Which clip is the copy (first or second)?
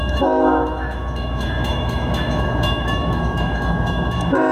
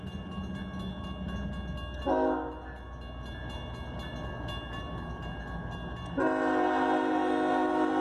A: first